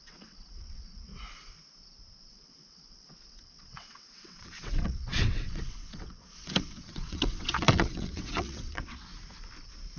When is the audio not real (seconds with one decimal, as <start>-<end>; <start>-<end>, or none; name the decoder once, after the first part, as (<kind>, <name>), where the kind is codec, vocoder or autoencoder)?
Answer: 0.0-1.1 (vocoder, WaveNeXt); 2.3-9.1